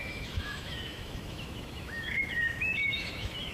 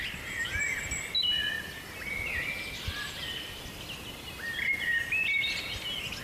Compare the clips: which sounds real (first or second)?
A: second